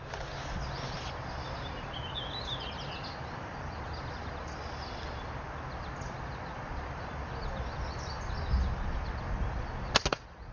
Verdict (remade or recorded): recorded